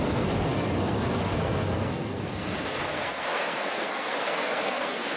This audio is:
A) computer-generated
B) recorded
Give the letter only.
A